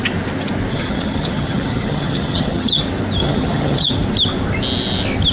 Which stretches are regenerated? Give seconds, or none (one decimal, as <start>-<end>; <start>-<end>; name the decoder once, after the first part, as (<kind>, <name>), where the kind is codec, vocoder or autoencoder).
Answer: 0.7-2.8 (vocoder, HiFi-GAN); 3.2-3.9